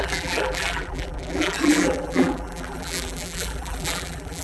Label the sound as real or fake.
fake